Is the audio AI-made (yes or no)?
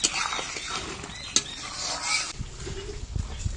no